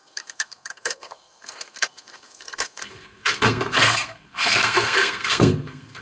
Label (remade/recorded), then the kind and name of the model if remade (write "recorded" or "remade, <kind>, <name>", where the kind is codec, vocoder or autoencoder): remade, codec, SNAC